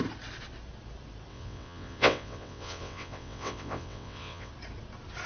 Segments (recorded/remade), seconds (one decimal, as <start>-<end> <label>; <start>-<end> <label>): 0.0-1.3 recorded; 1.3-4.5 remade; 4.5-5.3 recorded